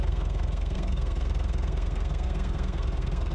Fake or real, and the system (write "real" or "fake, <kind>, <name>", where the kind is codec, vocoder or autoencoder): fake, codec, SNAC